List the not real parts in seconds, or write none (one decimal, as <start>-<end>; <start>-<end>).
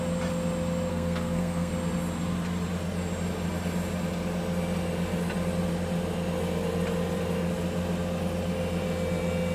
0.9-1.7